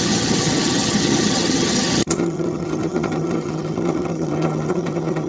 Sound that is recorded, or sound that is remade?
remade